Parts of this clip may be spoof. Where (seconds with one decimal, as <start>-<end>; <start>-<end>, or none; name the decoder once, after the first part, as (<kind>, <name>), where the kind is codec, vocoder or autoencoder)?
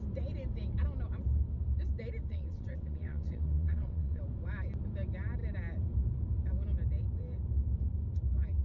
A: 2.3-4.2 (vocoder, WaveNeXt)